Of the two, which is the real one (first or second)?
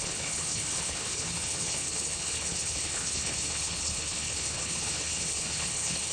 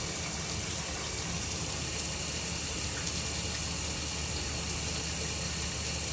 second